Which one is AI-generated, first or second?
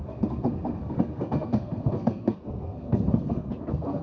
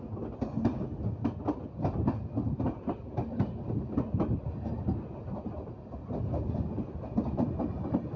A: first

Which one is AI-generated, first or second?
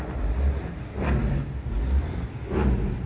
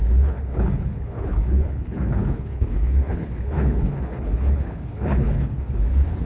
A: second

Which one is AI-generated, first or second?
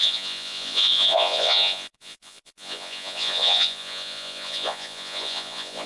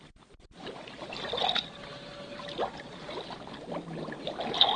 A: first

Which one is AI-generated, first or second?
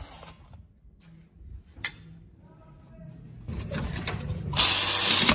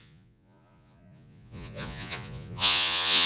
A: second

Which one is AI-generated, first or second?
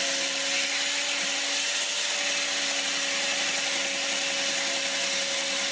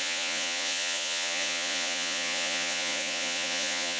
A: second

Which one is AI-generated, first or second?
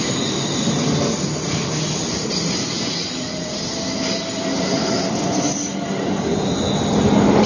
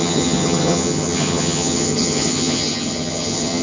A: second